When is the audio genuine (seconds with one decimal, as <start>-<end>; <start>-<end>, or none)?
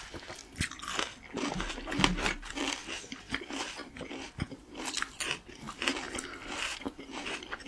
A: 0.0-7.7